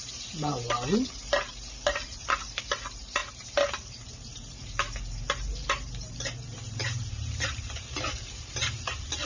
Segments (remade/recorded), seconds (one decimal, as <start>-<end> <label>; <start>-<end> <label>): 0.0-9.3 remade